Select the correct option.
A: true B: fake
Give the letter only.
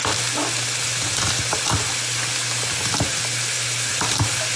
A